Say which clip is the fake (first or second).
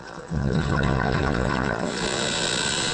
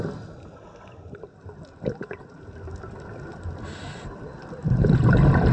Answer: first